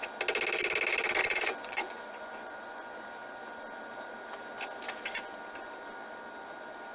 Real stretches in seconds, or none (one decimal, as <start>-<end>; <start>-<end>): 0.0-1.2; 3.0-6.9